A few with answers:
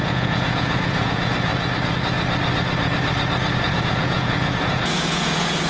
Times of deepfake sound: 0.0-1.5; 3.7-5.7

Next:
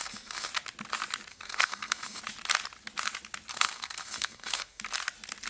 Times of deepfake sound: 0.0-0.5; 1.3-2.2; 3.5-4.8